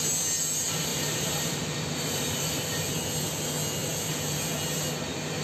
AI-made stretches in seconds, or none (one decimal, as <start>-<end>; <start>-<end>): 0.9-2.9; 3.8-4.5